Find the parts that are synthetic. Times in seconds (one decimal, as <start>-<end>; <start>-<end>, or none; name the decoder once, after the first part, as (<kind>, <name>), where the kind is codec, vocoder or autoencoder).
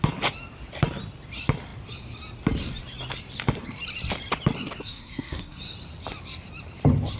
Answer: 4.8-5.6 (codec, SNAC)